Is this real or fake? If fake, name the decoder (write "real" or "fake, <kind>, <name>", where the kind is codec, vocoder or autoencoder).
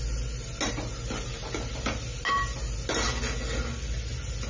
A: real